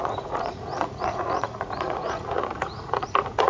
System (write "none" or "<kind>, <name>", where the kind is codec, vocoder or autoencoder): vocoder, Vocos